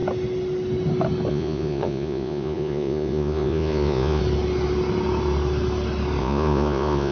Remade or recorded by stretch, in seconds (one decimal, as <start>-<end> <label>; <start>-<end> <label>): 0.0-1.3 recorded; 1.3-4.2 remade; 4.2-6.2 recorded; 6.2-7.1 remade